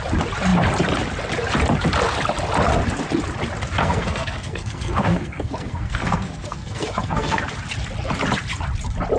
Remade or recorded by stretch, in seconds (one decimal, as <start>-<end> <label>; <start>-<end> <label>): 0.0-3.8 recorded; 3.8-7.5 remade; 7.5-9.2 recorded